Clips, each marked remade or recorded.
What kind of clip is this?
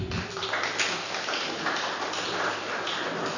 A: recorded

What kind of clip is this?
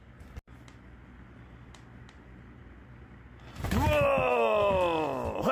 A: recorded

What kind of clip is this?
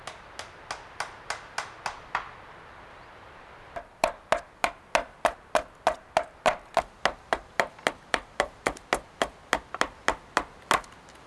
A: recorded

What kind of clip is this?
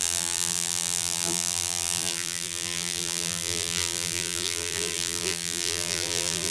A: remade